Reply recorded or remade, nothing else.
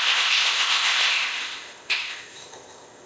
remade